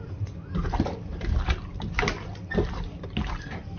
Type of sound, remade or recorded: recorded